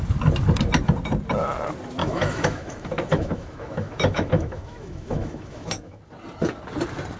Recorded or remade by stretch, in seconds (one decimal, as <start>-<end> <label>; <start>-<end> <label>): 0.0-2.0 recorded; 2.0-6.0 remade; 6.0-7.2 recorded